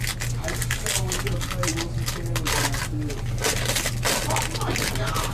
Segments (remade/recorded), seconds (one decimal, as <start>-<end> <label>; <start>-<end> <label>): 0.0-5.3 recorded